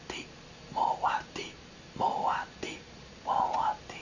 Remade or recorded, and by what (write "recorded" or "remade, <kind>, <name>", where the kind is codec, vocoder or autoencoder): recorded